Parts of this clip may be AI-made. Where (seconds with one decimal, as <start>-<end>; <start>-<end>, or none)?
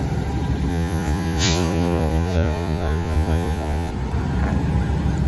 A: 0.7-3.9